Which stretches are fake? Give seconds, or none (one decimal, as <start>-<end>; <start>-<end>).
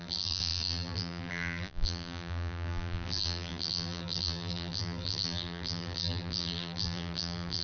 0.0-7.6